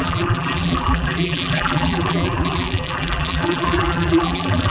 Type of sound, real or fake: fake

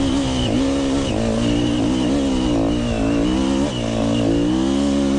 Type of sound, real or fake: real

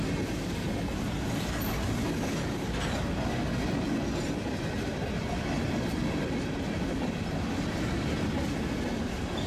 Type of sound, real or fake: real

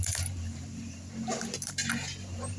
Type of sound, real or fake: fake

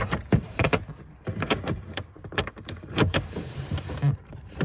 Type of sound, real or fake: fake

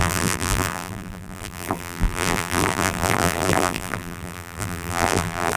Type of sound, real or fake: fake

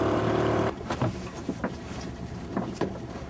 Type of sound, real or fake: fake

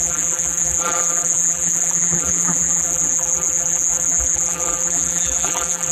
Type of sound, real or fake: fake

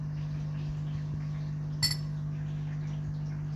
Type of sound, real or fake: real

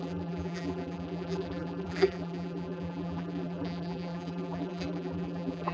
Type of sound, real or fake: fake